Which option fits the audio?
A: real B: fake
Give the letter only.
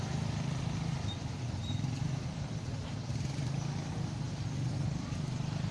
A